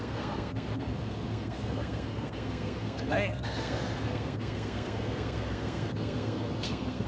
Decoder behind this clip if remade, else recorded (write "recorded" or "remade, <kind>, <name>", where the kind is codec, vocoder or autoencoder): remade, codec, SNAC